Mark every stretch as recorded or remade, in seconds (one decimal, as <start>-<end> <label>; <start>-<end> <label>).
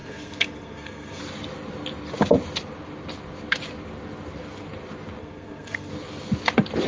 0.0-1.2 remade; 1.2-5.2 recorded; 5.2-5.9 remade; 5.9-6.9 recorded